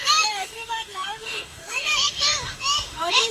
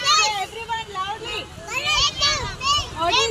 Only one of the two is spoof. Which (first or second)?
first